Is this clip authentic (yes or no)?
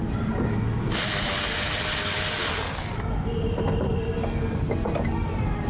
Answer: yes